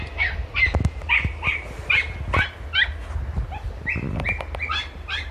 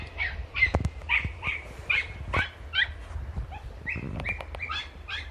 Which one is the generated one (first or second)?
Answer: second